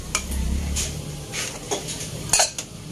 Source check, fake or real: real